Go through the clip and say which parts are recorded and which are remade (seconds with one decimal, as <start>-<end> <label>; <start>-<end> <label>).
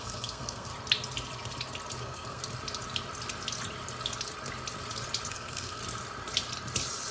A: 0.0-0.7 remade; 0.7-2.0 recorded; 2.0-2.4 remade; 2.4-5.3 recorded; 5.3-5.8 remade; 5.8-7.1 recorded